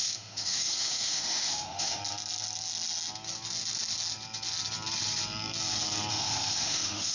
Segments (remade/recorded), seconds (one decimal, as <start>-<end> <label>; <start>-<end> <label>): 0.0-2.0 remade; 2.0-6.1 recorded; 6.1-7.1 remade